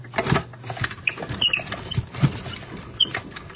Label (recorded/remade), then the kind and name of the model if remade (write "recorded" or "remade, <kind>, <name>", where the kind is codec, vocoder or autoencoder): recorded